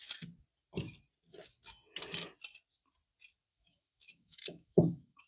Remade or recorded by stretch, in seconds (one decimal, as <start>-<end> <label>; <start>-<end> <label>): 0.0-3.5 recorded; 3.5-5.3 remade